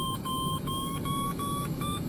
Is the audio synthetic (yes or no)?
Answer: yes